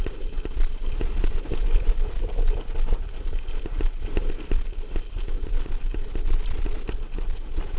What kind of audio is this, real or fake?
real